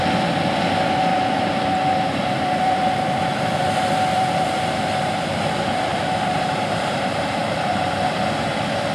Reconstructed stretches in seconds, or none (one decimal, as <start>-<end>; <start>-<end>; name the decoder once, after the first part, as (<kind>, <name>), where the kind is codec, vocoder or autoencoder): 1.1-5.1 (vocoder, BigVGAN v2); 5.9-8.0